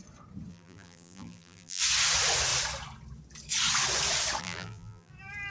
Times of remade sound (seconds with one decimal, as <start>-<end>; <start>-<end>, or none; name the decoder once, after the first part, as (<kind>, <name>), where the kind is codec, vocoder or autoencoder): 0.5-1.8 (vocoder, BigVGAN v2); 4.4-5.1